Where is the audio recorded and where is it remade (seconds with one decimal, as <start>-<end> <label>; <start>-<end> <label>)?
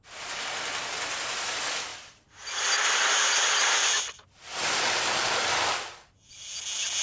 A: 0.0-1.9 recorded; 1.9-6.1 remade; 6.1-7.0 recorded